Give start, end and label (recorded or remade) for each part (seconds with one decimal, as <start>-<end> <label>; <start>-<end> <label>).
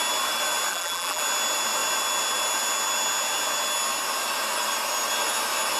0.0-0.7 recorded; 0.7-1.2 remade; 1.2-5.8 recorded